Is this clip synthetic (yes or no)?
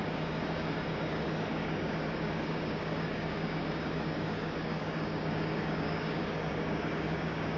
yes